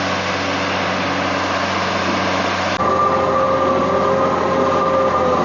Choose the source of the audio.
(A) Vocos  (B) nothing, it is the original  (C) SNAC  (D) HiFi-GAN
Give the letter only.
B